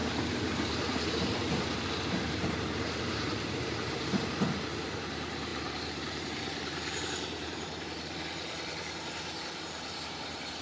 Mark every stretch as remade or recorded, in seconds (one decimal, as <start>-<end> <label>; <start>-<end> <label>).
0.0-10.6 remade